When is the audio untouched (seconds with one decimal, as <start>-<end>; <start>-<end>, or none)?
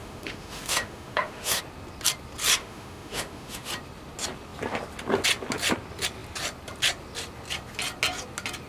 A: 1.6-2.6; 3.7-8.7